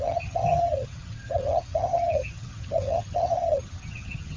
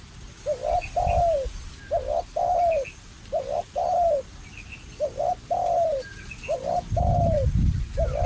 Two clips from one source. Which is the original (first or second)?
second